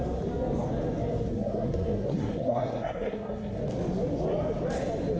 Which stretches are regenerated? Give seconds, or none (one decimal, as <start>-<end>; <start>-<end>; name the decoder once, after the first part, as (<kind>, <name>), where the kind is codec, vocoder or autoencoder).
1.3-3.6 (codec, SNAC)